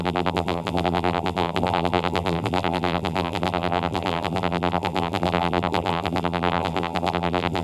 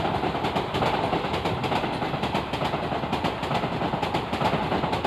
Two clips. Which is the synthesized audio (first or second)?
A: first